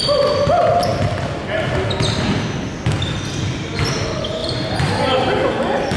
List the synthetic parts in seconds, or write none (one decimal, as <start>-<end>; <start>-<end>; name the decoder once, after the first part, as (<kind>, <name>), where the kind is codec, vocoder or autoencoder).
4.4-5.0 (vocoder, BigVGAN v2)